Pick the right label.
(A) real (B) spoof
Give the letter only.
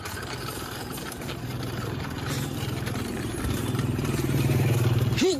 B